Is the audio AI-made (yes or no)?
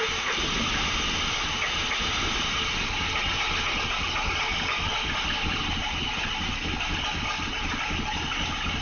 no